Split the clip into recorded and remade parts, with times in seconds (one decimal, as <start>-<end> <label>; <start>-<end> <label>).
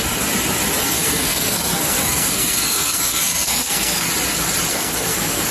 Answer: 0.0-0.8 recorded; 0.8-4.1 remade; 4.1-4.7 recorded; 4.7-5.5 remade